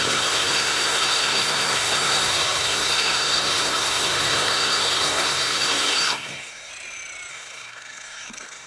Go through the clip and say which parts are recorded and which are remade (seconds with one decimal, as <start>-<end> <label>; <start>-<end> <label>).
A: 0.0-6.7 remade; 6.7-7.3 recorded; 7.3-8.7 remade